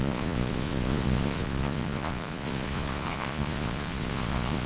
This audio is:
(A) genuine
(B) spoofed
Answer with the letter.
B